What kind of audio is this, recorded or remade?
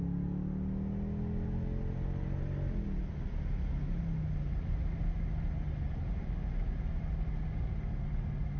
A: recorded